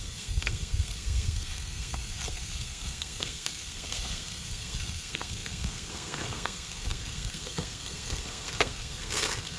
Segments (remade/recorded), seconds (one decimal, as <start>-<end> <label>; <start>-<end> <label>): 0.0-9.6 remade